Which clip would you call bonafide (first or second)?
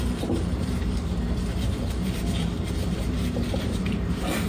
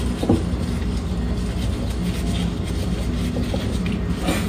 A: second